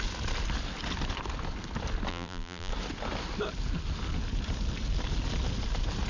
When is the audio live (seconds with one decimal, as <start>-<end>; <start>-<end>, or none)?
0.0-2.1; 2.7-6.1